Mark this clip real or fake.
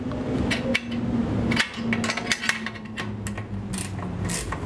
real